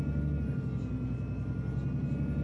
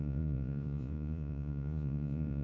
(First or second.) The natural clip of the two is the first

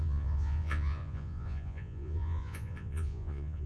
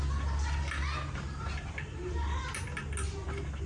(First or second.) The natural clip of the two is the second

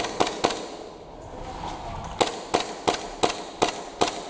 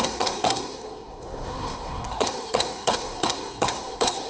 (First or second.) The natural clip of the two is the first